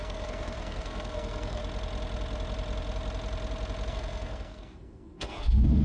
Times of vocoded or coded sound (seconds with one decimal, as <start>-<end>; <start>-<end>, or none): 0.0-1.6; 3.9-5.8